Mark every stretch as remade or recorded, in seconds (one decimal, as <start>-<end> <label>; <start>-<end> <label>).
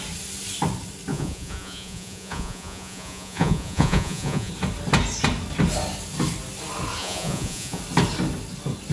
0.0-1.1 recorded; 1.1-4.5 remade; 4.5-7.0 recorded; 7.0-7.8 remade; 7.8-8.9 recorded